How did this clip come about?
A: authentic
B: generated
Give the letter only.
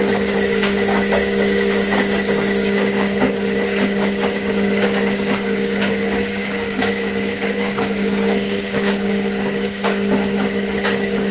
B